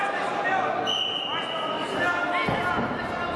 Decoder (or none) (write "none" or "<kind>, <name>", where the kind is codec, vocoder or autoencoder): none